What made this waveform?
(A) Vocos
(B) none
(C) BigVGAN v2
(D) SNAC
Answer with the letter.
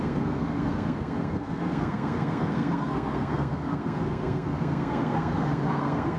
D